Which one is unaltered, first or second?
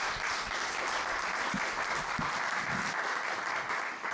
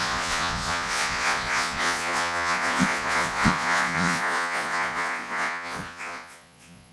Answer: first